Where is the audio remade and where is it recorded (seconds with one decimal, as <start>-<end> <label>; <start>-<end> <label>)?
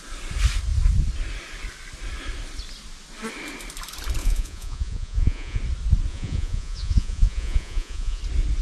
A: 0.0-4.2 recorded; 4.2-5.6 remade; 5.6-6.1 recorded; 6.1-8.2 remade; 8.2-8.6 recorded